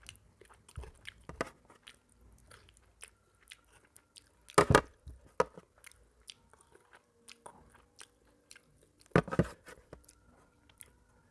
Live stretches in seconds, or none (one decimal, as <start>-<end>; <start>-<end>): 0.0-11.3